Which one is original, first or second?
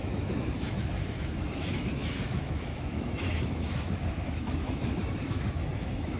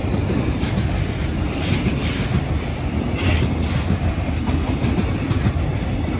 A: second